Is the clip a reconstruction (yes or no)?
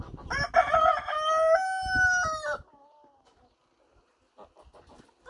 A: no